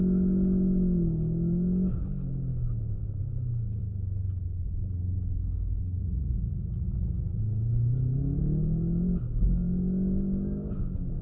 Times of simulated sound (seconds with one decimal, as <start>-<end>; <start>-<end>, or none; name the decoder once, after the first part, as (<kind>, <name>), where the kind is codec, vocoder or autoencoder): 6.0-7.4 (vocoder, Vocos)